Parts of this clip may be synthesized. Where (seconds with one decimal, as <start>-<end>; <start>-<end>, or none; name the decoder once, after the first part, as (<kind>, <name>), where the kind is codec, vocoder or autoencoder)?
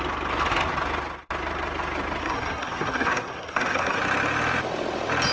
2.2-4.0 (codec, SNAC)